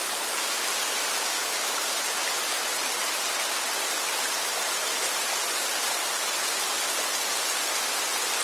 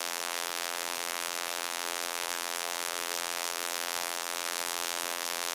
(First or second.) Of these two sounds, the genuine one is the first